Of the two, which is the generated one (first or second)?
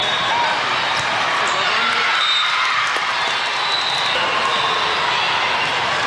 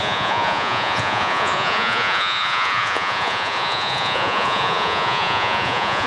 second